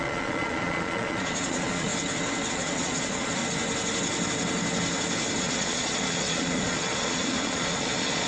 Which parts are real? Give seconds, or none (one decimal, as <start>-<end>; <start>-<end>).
1.9-2.5; 3.4-5.4